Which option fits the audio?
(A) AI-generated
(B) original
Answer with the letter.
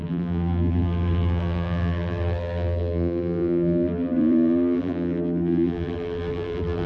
A